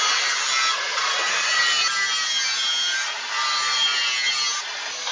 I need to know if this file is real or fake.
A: real